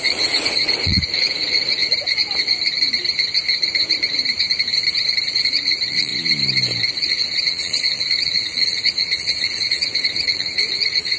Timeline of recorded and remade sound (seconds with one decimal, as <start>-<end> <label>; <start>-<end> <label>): 0.0-1.8 remade; 1.8-5.3 recorded; 5.3-6.1 remade; 6.1-6.9 recorded; 6.9-11.2 remade